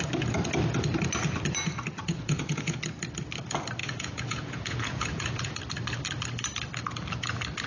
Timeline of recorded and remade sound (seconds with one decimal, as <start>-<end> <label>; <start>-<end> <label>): 0.0-2.0 recorded; 2.0-2.8 remade; 2.8-3.8 recorded; 3.8-5.6 remade; 5.6-7.7 recorded